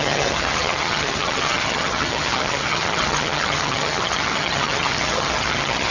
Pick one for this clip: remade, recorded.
remade